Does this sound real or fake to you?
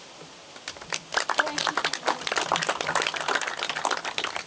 real